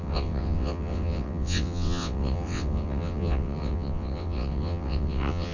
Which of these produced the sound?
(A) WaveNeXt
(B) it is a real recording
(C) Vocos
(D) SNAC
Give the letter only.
A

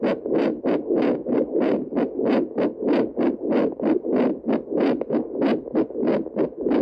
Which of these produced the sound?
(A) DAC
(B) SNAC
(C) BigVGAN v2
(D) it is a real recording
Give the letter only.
D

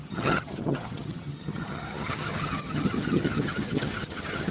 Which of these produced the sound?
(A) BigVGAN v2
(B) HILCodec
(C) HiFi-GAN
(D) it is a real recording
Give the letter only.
C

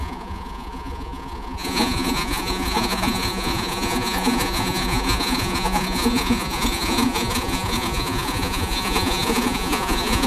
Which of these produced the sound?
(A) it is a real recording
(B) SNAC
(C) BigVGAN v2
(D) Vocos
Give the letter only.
D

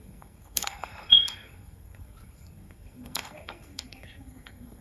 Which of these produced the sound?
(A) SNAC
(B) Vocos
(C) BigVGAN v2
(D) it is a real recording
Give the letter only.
A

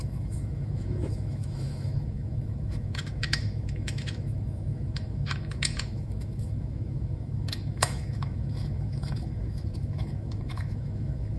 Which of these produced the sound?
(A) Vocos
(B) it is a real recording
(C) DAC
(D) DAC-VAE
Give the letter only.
D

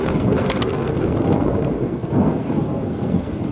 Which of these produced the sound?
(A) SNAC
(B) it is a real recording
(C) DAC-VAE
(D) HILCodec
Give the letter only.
A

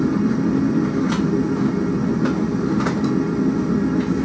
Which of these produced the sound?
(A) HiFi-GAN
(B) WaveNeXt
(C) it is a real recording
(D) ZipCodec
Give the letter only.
C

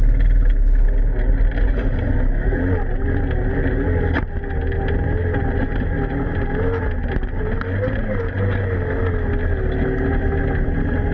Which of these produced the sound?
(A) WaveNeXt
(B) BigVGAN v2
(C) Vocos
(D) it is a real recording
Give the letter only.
D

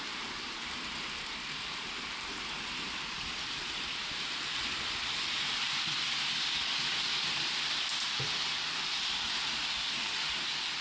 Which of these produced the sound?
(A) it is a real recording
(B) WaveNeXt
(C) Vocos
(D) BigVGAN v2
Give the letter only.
D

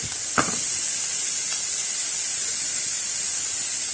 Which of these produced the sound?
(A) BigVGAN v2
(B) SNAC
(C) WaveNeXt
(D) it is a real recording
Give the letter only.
D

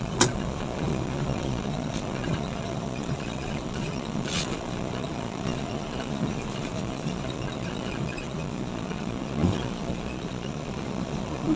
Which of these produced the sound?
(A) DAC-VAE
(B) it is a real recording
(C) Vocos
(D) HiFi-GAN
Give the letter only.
C